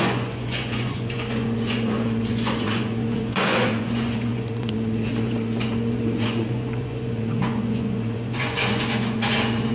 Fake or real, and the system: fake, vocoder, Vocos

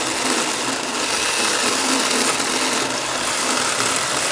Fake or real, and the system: real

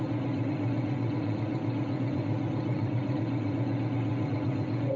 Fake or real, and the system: fake, vocoder, Vocos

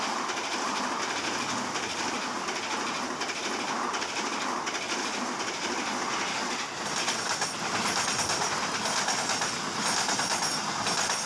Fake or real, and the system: real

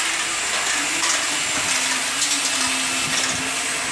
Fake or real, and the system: real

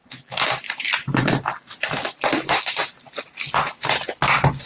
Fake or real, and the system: real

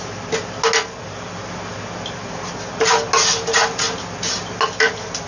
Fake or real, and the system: real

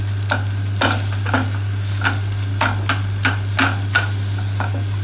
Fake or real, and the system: real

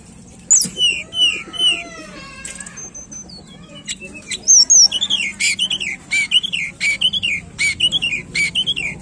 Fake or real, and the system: real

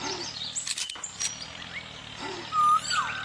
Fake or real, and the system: real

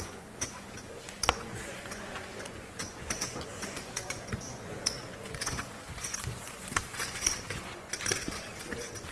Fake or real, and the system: fake, vocoder, Vocos